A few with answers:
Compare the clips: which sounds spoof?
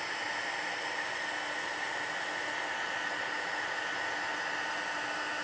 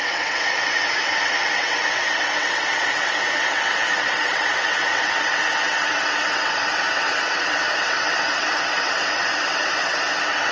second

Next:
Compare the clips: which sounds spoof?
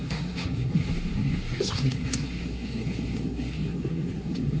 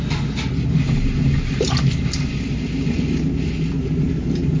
first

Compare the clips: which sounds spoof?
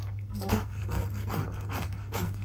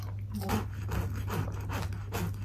first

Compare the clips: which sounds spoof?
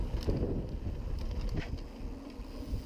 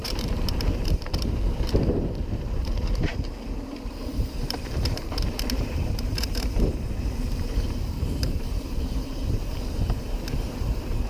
second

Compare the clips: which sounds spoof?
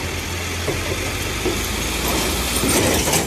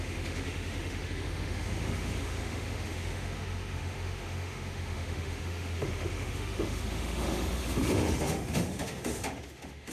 second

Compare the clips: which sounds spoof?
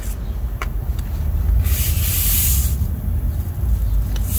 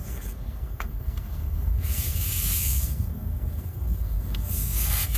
second